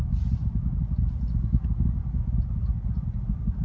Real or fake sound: real